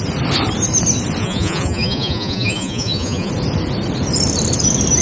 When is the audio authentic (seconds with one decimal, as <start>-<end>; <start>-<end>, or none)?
0.0-1.2; 3.3-5.0